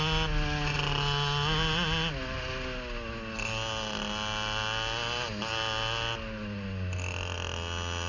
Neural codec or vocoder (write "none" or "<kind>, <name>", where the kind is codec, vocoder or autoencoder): none